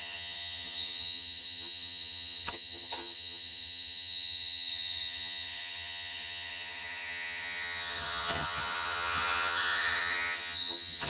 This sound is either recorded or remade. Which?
remade